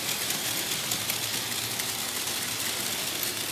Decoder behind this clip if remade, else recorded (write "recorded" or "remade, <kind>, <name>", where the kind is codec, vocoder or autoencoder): recorded